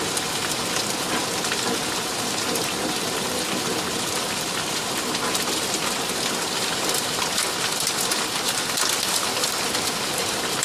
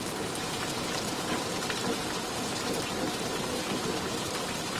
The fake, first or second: second